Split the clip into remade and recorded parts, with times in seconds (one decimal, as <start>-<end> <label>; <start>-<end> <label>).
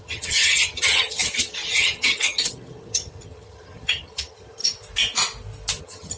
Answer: 0.0-4.6 remade; 4.6-5.8 recorded; 5.8-6.2 remade